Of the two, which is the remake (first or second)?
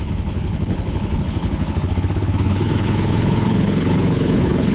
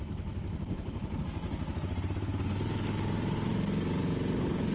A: first